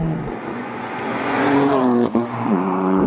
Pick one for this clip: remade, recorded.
remade